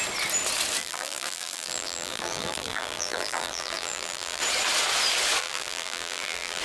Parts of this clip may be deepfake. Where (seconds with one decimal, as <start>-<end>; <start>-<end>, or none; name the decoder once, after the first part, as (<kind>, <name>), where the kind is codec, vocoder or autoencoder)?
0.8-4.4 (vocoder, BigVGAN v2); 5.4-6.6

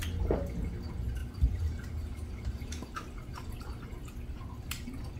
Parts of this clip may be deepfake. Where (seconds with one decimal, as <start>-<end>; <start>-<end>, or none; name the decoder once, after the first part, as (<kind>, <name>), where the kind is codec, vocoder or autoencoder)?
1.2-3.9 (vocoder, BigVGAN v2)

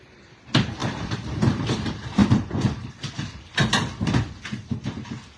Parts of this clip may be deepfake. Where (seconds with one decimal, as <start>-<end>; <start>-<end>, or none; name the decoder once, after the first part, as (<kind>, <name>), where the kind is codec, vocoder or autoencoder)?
0.0-5.4 (vocoder, BigVGAN v2)